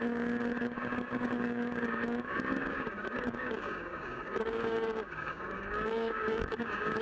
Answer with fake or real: fake